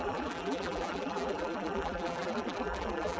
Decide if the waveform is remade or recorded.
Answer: remade